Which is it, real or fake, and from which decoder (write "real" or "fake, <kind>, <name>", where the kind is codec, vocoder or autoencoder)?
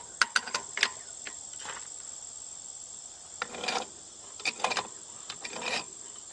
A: real